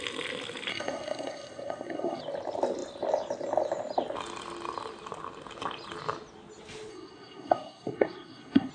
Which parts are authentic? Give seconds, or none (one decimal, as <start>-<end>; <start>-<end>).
0.0-0.7; 2.2-6.9